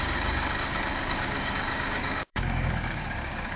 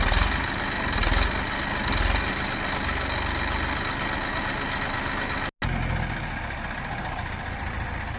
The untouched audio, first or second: second